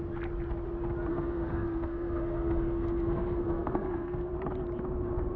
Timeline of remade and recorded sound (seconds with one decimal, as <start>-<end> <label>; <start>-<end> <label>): 0.0-1.1 recorded; 1.1-4.3 remade; 4.3-5.4 recorded